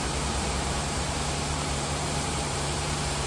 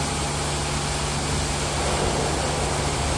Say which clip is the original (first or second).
second